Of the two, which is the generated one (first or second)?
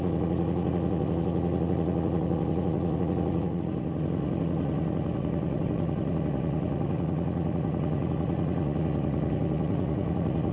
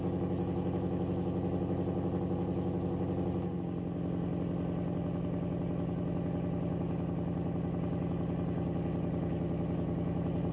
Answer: first